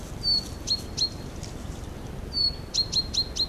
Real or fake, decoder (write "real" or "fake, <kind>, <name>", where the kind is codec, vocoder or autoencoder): real